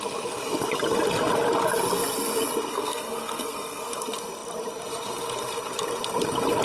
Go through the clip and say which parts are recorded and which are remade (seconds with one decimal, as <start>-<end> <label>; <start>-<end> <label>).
0.0-2.7 recorded; 2.7-4.0 remade; 4.0-6.6 recorded